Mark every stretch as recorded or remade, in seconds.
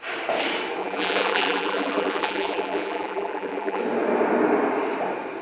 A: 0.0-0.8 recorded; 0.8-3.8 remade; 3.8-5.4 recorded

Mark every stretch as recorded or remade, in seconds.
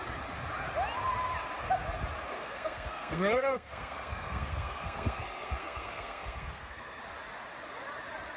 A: 0.0-2.3 recorded; 2.3-7.0 remade; 7.0-8.4 recorded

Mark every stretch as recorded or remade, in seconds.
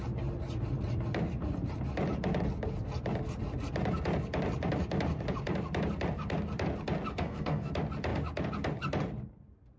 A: 0.0-7.1 recorded; 7.1-7.7 remade; 7.7-9.8 recorded